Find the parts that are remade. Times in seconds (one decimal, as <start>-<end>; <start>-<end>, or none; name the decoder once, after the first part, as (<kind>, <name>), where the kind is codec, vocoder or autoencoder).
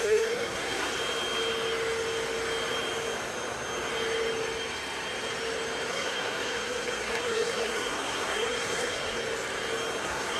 0.0-0.9 (codec, SNAC); 5.9-9.2; 10.0-10.4